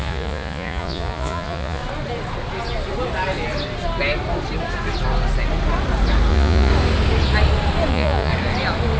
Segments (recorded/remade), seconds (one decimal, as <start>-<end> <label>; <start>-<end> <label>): 0.0-1.8 remade; 1.8-6.3 recorded; 6.3-6.7 remade; 6.7-7.9 recorded; 7.9-8.3 remade; 8.3-9.0 recorded